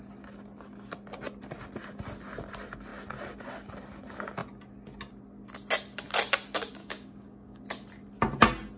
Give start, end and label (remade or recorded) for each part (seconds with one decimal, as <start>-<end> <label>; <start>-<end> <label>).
0.0-6.8 recorded; 6.8-7.6 remade; 7.6-8.8 recorded